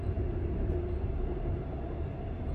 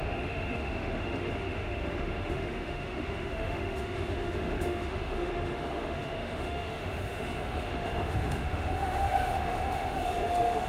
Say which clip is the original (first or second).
first